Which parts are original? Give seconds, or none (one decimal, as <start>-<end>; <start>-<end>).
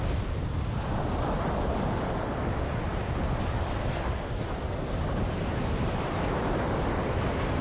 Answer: 0.0-7.6